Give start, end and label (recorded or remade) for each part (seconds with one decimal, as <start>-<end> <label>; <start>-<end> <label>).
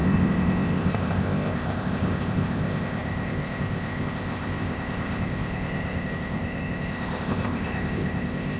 0.0-8.6 remade